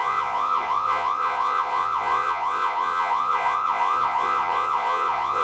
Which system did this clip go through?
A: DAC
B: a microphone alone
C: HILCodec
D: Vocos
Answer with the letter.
D